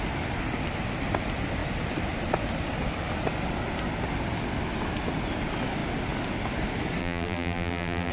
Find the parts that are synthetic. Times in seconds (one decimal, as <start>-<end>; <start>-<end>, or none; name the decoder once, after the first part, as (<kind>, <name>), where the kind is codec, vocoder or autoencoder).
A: 7.0-8.1 (vocoder, BigVGAN v2)